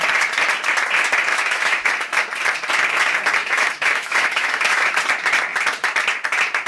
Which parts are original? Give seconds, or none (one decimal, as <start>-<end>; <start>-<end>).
0.0-1.3; 1.9-3.4; 4.9-6.7